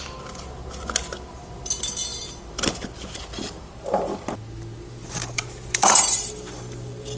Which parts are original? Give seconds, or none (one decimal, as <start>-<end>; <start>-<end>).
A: 0.0-5.0; 5.9-7.2